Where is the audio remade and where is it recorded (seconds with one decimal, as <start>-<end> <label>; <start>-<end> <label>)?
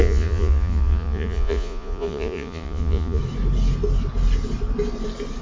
0.0-3.2 remade; 3.2-5.4 recorded